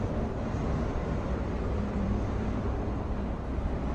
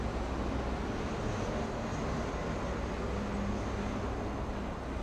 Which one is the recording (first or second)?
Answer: second